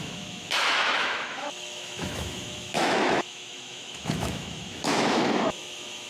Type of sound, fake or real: fake